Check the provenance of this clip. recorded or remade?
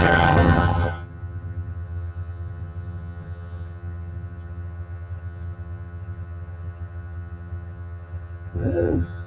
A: remade